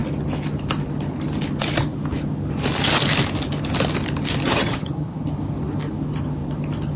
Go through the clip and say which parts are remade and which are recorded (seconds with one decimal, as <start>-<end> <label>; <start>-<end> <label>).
0.0-4.4 recorded; 4.4-5.3 remade; 5.3-7.0 recorded

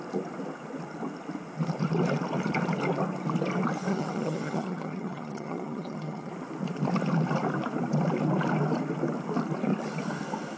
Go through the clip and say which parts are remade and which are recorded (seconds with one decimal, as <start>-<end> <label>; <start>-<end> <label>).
0.0-3.9 recorded; 3.9-6.3 remade; 6.3-10.6 recorded

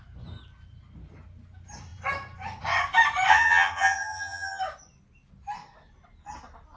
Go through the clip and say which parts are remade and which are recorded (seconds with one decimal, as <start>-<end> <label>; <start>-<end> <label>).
0.0-3.3 recorded; 3.3-4.6 remade; 4.6-6.8 recorded

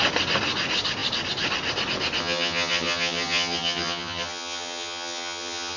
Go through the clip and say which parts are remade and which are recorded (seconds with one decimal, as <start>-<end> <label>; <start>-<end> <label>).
0.0-2.2 recorded; 2.2-5.8 remade

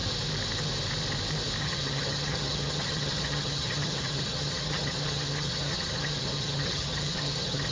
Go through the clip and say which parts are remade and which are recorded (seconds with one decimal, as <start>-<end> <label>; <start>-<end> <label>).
0.0-1.6 recorded; 1.6-7.7 remade

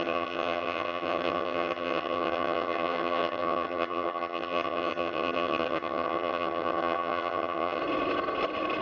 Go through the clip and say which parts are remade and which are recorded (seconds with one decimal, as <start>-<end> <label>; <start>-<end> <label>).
0.0-7.8 remade; 7.8-8.8 recorded

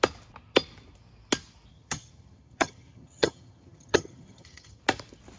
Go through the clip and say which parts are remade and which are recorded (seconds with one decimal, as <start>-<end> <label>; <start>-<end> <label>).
0.0-1.7 recorded; 1.7-4.8 remade; 4.8-5.4 recorded